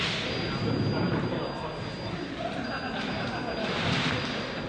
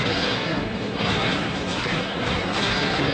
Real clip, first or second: first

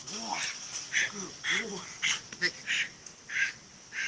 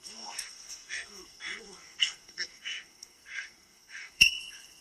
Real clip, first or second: first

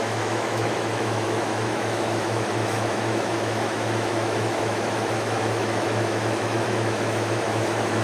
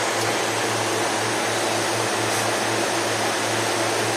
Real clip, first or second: second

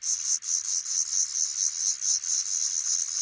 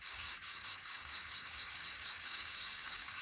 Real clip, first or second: first